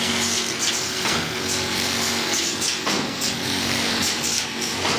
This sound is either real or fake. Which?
fake